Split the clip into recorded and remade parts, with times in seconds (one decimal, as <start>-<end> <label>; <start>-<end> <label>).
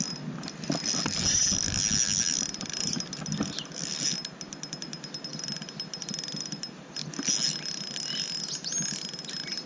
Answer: 0.0-9.7 recorded